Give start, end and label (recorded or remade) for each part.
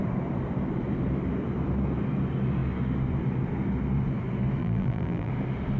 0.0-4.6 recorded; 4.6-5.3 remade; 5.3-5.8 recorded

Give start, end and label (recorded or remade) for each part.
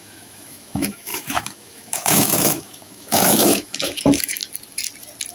0.0-4.4 remade; 4.4-5.3 recorded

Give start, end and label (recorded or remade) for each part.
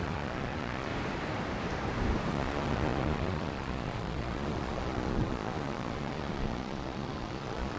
0.0-0.9 remade; 0.9-2.3 recorded; 2.3-7.8 remade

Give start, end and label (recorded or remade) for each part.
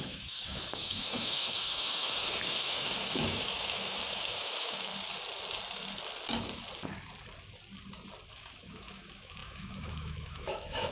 0.0-4.9 remade; 4.9-8.3 recorded; 8.3-10.9 remade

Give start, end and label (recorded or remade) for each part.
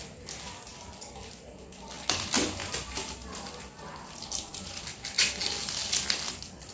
0.0-6.7 recorded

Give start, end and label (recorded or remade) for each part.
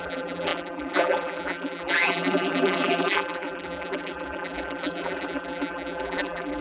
0.0-6.6 remade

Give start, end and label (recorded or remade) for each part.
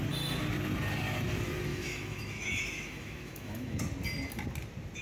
0.0-1.7 recorded; 1.7-3.8 remade; 3.8-5.0 recorded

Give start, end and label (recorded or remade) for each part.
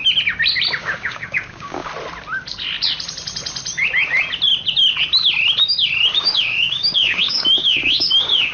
0.0-0.8 recorded; 0.8-1.9 remade; 1.9-6.1 recorded; 6.1-8.5 remade